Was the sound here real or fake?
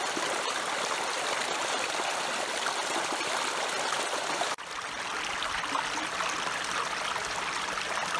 real